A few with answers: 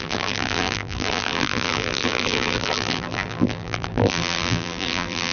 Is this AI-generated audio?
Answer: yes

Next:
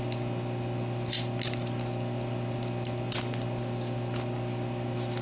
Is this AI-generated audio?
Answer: no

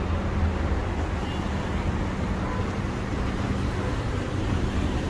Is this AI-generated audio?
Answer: no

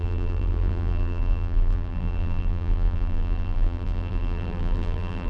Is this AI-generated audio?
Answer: yes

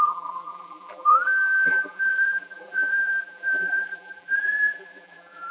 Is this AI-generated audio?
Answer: yes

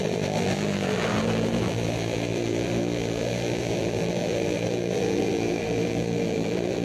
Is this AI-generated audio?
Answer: yes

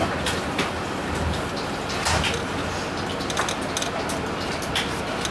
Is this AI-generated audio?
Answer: no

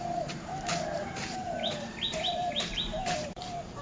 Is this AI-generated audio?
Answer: yes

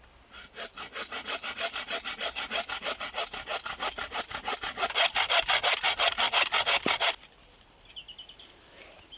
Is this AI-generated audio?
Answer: no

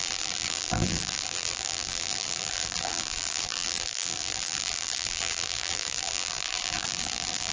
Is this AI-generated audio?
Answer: yes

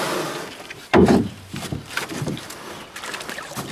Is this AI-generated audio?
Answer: yes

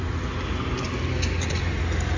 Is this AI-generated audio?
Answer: no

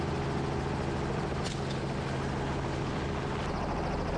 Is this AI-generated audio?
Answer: no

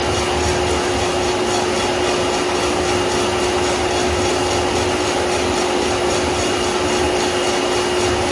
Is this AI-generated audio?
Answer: no